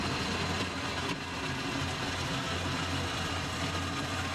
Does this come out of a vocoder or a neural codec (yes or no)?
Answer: no